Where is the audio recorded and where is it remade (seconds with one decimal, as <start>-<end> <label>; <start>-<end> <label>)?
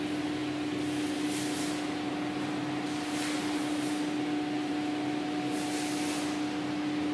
0.0-7.1 recorded